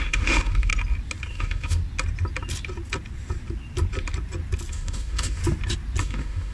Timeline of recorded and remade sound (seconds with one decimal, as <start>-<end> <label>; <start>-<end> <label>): 0.0-0.7 remade; 0.7-1.3 recorded; 1.3-1.8 remade; 1.8-4.7 recorded; 4.7-5.4 remade; 5.4-6.0 recorded; 6.0-6.5 remade